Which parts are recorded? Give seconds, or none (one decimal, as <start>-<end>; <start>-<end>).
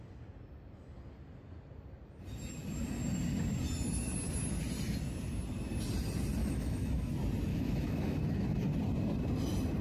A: 0.0-6.4; 7.1-7.5; 8.7-9.8